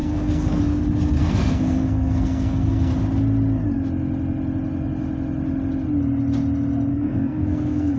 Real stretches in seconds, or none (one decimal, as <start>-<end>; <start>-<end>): 0.6-1.2; 2.9-6.9